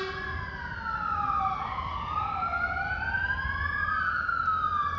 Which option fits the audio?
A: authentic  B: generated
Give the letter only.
A